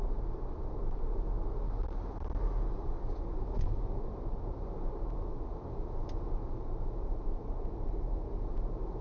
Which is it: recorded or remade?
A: recorded